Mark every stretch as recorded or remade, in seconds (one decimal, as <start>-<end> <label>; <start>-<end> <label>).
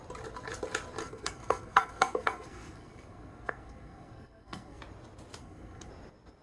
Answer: 0.0-1.0 recorded; 1.0-4.8 remade; 4.8-5.4 recorded; 5.4-5.9 remade; 5.9-6.4 recorded